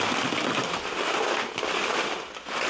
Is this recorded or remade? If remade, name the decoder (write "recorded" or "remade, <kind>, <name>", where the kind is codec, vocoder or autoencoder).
remade, vocoder, BigVGAN v2